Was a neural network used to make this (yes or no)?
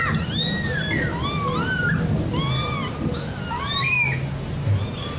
no